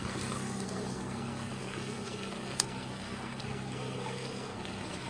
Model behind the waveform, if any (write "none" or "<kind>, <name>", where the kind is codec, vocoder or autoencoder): codec, SNAC